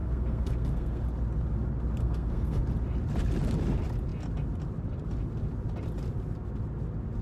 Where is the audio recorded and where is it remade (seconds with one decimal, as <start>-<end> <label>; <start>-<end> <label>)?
0.0-1.0 remade; 1.0-2.0 recorded; 2.0-2.6 remade; 2.6-7.2 recorded